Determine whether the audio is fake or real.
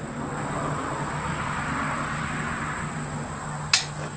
real